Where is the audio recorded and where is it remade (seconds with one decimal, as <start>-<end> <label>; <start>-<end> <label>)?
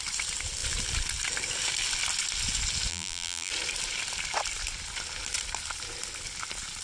0.0-2.9 recorded; 2.9-3.5 remade; 3.5-6.8 recorded